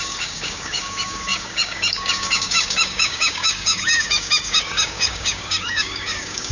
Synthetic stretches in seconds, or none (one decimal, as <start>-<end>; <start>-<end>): 0.0-6.5